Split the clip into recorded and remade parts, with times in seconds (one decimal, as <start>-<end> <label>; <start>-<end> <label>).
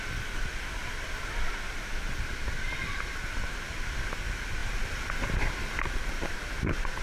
0.0-7.0 recorded